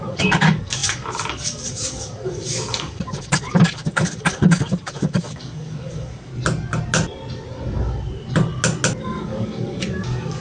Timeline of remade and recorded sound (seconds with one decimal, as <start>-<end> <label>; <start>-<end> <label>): 0.0-6.3 remade; 6.3-9.0 recorded; 9.0-10.4 remade

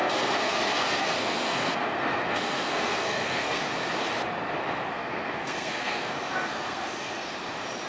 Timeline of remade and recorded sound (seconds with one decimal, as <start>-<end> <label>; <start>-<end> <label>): 0.0-3.6 remade; 3.6-4.9 recorded; 4.9-7.3 remade; 7.3-7.9 recorded

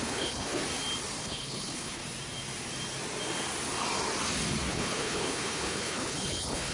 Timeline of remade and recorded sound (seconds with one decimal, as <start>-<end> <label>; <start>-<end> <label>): 0.0-0.6 remade; 0.6-1.2 recorded; 1.2-2.0 remade; 2.0-4.7 recorded; 4.7-6.7 remade

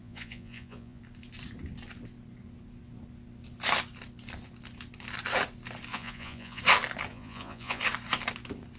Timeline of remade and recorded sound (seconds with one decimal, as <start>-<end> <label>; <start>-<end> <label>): 0.0-1.0 remade; 1.0-5.9 recorded; 5.9-6.6 remade; 6.6-7.1 recorded; 7.1-7.8 remade; 7.8-8.8 recorded

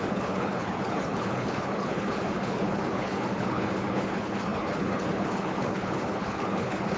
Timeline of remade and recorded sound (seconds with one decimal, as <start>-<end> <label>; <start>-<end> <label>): 0.0-7.0 remade

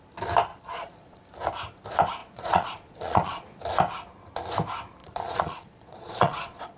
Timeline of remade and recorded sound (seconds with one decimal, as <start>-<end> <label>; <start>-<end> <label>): 0.0-0.5 recorded; 0.5-1.2 remade; 1.2-2.2 recorded; 2.2-3.6 remade; 3.6-5.0 recorded; 5.0-6.8 remade